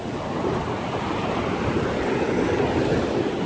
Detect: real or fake real